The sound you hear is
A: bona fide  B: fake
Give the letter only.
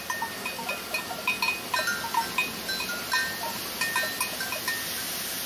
A